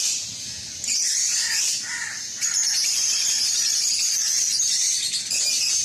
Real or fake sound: fake